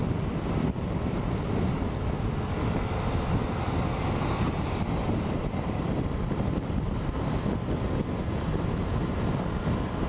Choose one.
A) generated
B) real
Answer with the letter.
B